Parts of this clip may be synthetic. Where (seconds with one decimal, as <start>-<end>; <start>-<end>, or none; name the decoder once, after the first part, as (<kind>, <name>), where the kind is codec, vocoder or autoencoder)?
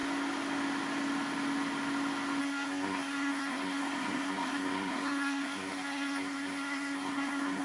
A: 2.4-7.6 (codec, SNAC)